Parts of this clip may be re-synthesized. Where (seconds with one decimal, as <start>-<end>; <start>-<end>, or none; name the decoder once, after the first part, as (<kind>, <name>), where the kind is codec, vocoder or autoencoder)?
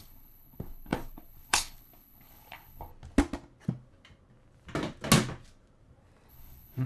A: 0.0-2.9 (codec, HILCodec); 6.3-6.9